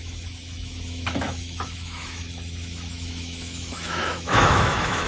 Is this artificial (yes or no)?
yes